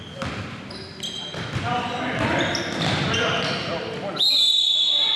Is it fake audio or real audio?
real